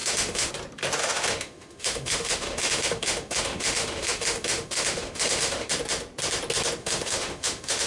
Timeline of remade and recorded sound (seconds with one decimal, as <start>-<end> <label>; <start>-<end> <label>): 0.0-0.5 remade; 0.5-1.0 recorded; 1.0-5.7 remade; 5.7-6.8 recorded; 6.8-7.9 remade